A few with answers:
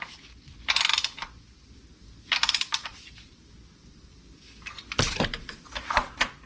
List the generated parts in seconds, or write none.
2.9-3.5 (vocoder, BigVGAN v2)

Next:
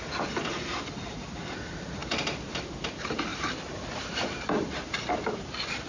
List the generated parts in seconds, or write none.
3.3-5.1 (vocoder, BigVGAN v2)

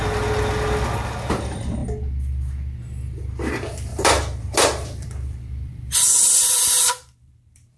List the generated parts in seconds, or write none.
3.9-7.8 (vocoder, BigVGAN v2)

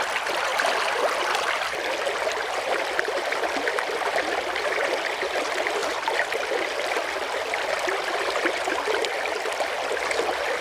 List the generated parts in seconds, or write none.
none

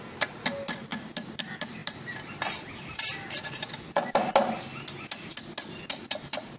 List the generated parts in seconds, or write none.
0.0-0.9 (vocoder, BigVGAN v2); 1.4-4.3; 5.9-6.6

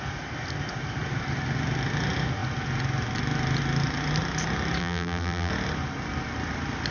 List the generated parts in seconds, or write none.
4.8-5.5 (vocoder, BigVGAN v2)